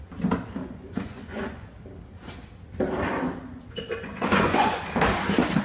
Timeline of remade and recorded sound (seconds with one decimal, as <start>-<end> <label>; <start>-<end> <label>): 0.0-0.6 recorded; 0.6-1.8 remade; 1.8-3.4 recorded; 3.4-4.8 remade; 4.8-5.6 recorded